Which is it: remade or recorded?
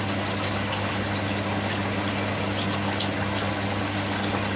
recorded